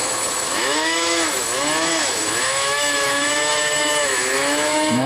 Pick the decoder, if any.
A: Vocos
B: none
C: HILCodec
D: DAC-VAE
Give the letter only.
D